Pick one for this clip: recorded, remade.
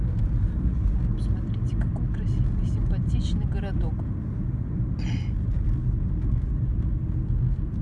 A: recorded